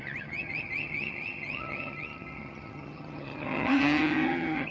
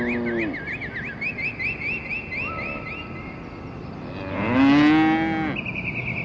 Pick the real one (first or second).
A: second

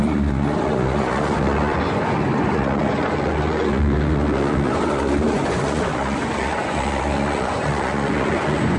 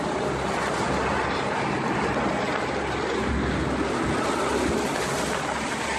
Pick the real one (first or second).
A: second